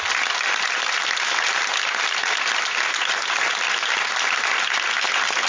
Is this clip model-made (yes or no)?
no